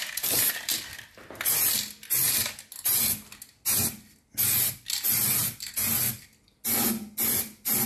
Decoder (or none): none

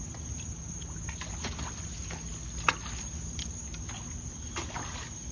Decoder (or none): none